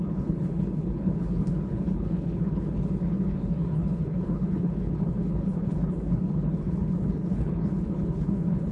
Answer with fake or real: fake